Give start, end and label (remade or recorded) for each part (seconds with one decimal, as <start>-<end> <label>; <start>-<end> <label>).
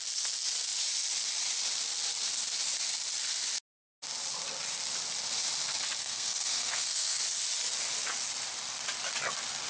0.0-6.0 recorded; 6.0-7.2 remade; 7.2-9.7 recorded